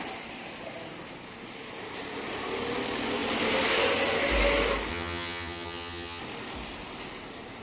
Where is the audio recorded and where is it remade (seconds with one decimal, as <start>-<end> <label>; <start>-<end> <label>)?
0.0-4.9 recorded; 4.9-6.2 remade; 6.2-7.6 recorded